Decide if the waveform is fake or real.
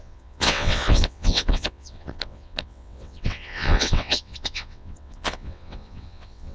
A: fake